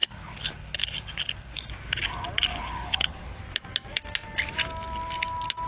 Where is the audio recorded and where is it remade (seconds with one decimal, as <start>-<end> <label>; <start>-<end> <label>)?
0.0-1.7 remade; 1.7-2.5 recorded; 2.5-3.4 remade; 3.4-5.7 recorded